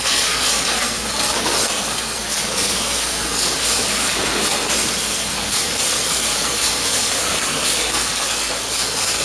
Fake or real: fake